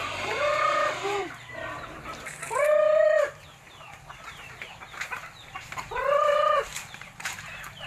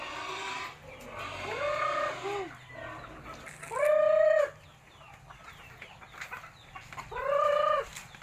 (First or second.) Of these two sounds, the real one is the second